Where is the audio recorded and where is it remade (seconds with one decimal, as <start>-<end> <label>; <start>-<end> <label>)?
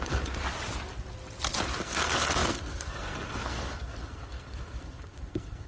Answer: 0.0-0.4 remade; 0.4-1.8 recorded; 1.8-5.7 remade